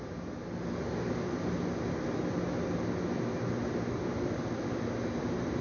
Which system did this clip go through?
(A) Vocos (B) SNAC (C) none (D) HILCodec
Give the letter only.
C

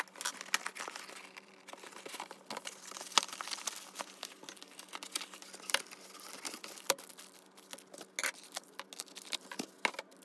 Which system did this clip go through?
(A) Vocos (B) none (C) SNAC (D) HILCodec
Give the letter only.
B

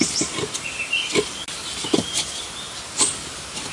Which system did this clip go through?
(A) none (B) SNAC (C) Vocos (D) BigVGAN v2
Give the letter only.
A